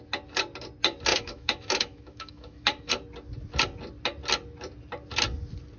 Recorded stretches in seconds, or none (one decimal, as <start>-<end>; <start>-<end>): 0.0-1.1; 2.9-5.8